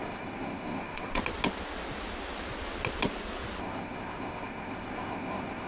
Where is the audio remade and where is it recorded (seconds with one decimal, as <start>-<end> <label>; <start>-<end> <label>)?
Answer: 0.0-1.2 remade; 1.2-3.6 recorded; 3.6-5.7 remade

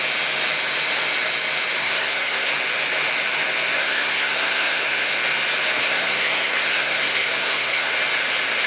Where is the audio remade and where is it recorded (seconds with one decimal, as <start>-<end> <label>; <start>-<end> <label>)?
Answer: 0.0-1.8 recorded; 1.8-2.5 remade; 2.5-3.8 recorded; 3.8-5.1 remade; 5.1-5.8 recorded; 5.8-7.9 remade; 7.9-8.7 recorded

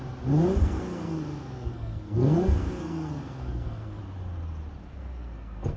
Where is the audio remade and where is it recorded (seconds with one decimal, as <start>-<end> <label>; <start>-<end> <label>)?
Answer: 0.0-0.6 recorded; 0.6-4.0 remade; 4.0-4.8 recorded; 4.8-5.8 remade

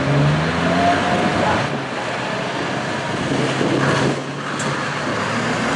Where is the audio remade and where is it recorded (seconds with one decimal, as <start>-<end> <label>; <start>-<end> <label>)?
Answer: 0.0-5.8 recorded

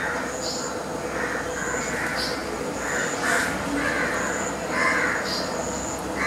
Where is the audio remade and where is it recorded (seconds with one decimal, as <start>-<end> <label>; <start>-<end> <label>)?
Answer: 0.0-6.3 recorded

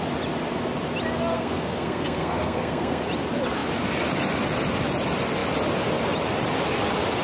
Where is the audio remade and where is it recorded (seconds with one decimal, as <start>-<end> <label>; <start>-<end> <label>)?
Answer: 0.0-1.3 recorded; 1.3-3.1 remade; 3.1-7.2 recorded